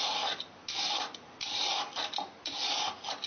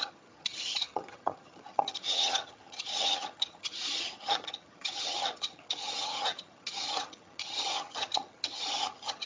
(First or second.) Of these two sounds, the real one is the first